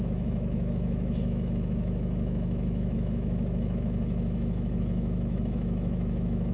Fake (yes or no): yes